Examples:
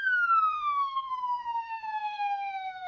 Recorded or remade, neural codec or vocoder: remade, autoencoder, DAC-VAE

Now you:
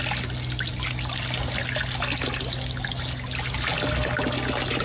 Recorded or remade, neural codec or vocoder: recorded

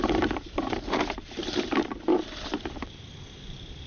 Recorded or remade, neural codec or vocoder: recorded